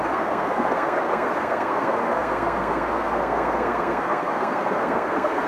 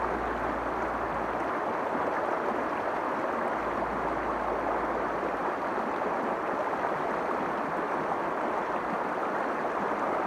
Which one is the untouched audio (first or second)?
second